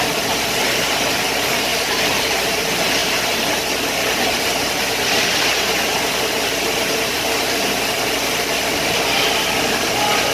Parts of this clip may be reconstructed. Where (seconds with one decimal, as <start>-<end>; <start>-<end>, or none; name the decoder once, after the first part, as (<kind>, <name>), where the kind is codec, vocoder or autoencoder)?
1.7-2.6 (vocoder, BigVGAN v2); 3.0-7.8